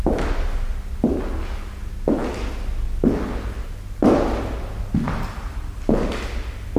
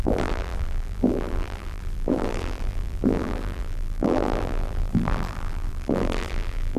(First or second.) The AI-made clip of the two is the second